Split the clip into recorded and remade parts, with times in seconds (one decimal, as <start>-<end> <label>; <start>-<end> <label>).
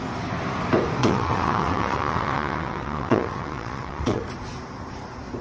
0.0-1.0 recorded; 1.0-4.2 remade; 4.2-5.4 recorded